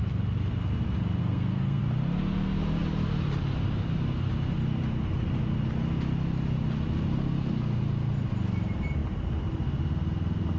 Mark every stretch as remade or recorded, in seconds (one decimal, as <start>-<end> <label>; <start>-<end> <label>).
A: 0.0-1.2 recorded; 1.2-1.8 remade; 1.8-10.6 recorded